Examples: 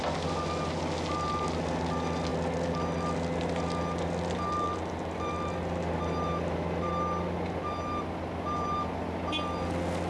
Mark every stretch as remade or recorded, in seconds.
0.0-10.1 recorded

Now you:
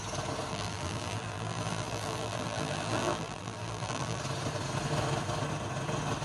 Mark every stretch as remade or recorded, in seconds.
0.0-0.5 recorded; 0.5-4.2 remade; 4.2-6.2 recorded

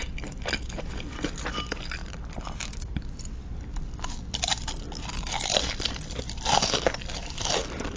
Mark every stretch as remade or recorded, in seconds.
0.0-8.0 remade

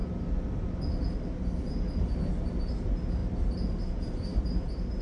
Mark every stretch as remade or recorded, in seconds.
0.0-3.2 recorded; 3.2-5.0 remade

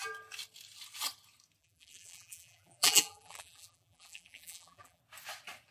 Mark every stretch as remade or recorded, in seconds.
0.0-1.6 recorded; 1.6-5.0 remade; 5.0-5.7 recorded

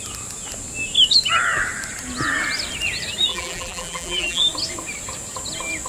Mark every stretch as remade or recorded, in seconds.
0.0-3.3 recorded; 3.3-4.4 remade; 4.4-5.9 recorded

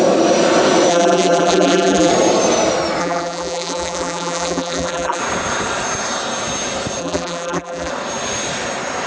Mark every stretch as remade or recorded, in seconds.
0.0-0.9 recorded; 0.9-2.1 remade; 2.1-3.0 recorded; 3.0-5.2 remade; 5.2-7.0 recorded; 7.0-7.9 remade; 7.9-9.1 recorded

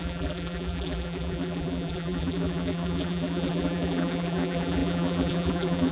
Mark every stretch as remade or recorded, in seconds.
0.0-5.9 remade